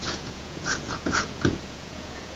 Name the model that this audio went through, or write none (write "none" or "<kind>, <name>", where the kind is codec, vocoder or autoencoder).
vocoder, Vocos